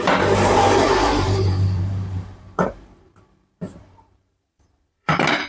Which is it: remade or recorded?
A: remade